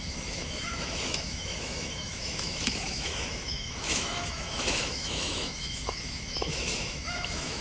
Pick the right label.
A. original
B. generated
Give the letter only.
B